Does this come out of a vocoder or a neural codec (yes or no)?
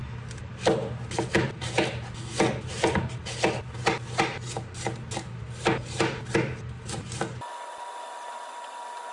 no